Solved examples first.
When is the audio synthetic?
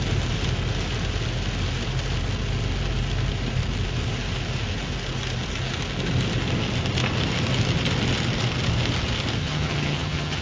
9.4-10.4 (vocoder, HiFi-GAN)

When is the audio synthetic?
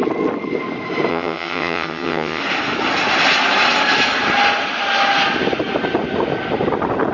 1.1-2.4 (vocoder, HiFi-GAN)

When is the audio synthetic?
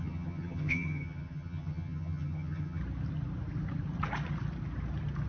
0.0-2.8 (vocoder, HiFi-GAN)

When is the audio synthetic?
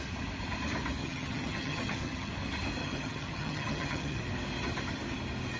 1.0-2.3 (vocoder, HiFi-GAN); 2.8-4.2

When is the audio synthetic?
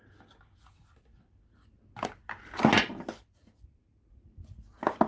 none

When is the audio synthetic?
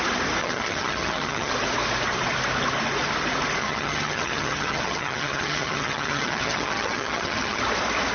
0.4-1.5 (vocoder, HiFi-GAN); 3.6-7.6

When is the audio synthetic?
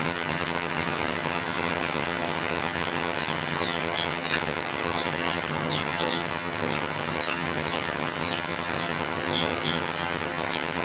0.0-10.8 (vocoder, HiFi-GAN)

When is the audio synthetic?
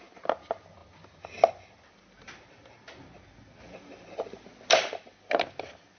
none